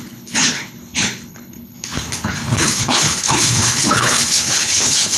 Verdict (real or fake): fake